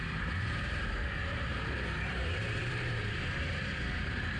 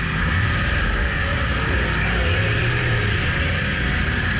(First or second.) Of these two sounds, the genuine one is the second